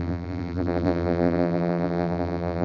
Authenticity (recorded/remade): remade